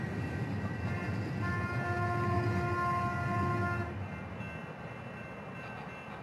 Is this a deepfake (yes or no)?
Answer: no